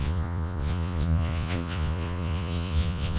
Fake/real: fake